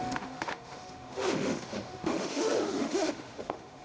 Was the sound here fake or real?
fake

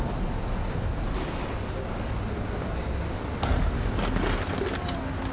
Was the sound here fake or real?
real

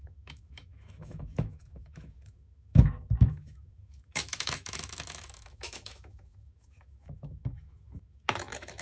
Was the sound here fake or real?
fake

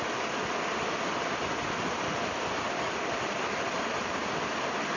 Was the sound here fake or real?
real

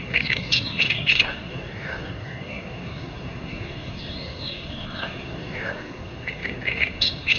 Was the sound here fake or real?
fake